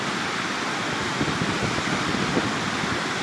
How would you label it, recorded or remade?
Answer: recorded